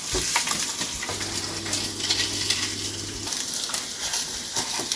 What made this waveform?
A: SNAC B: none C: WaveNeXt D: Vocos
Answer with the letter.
B